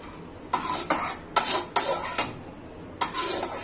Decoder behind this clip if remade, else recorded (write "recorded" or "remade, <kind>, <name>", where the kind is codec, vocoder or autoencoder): recorded